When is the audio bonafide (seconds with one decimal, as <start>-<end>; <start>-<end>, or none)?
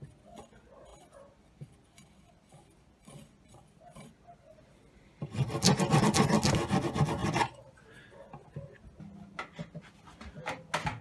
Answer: 0.0-0.9; 6.0-7.2; 7.8-11.0